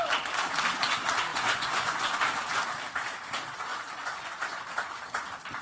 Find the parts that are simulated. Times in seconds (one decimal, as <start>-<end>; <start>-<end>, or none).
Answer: 1.3-2.2; 3.7-4.6